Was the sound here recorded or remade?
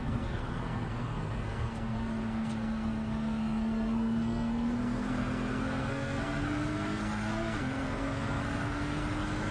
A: remade